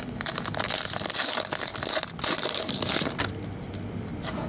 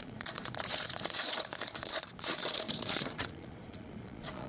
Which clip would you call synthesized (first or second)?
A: second